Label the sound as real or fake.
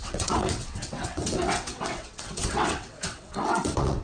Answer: fake